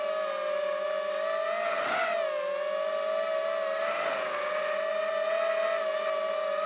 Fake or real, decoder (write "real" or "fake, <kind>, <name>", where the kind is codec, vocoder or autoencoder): real